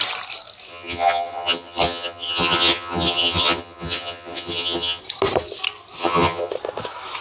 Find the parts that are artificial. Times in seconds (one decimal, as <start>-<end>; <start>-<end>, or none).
0.7-5.0; 6.0-6.5